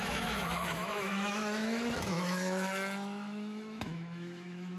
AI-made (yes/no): yes